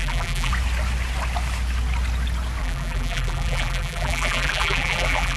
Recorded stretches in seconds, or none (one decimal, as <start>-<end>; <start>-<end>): 0.5-2.6